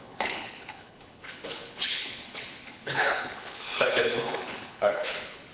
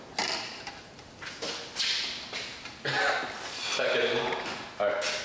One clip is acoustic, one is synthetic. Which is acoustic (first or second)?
second